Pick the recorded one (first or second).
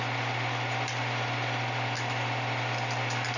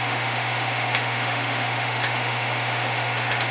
first